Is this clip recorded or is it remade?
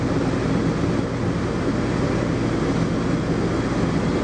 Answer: recorded